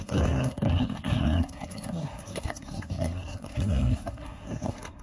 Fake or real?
fake